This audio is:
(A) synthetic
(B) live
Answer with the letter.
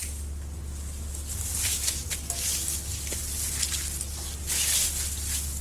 B